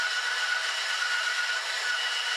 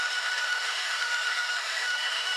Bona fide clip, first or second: first